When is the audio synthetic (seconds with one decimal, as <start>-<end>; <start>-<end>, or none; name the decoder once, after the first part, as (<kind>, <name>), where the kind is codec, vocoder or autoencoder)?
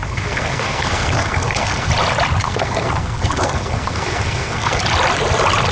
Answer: 0.0-1.9 (codec, SNAC); 2.4-4.8